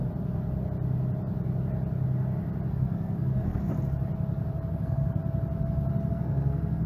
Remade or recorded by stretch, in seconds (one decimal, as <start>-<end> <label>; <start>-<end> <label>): 0.0-2.7 recorded; 2.7-3.7 remade; 3.7-4.7 recorded; 4.7-5.2 remade; 5.2-6.1 recorded; 6.1-6.9 remade